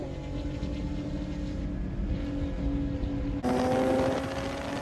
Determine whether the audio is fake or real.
real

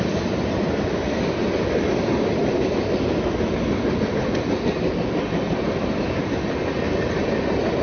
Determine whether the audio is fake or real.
real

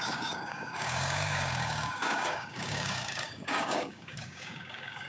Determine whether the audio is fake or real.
fake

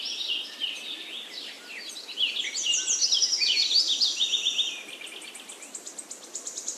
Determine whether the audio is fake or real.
real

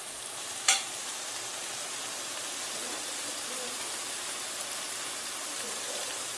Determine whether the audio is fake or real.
fake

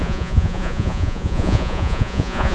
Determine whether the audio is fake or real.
fake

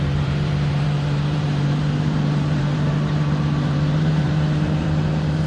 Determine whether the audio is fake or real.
fake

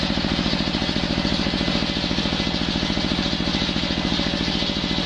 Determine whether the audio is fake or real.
real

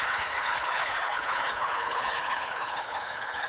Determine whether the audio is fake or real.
fake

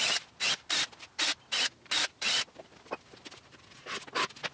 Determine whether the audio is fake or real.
real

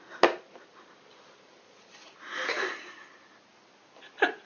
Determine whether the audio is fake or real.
real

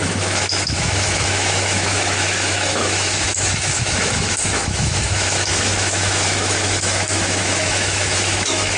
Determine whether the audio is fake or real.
fake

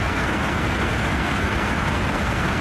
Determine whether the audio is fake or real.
fake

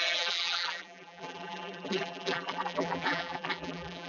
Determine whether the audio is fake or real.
fake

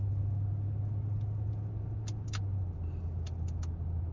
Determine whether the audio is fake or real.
real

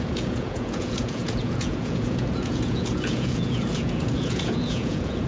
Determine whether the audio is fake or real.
fake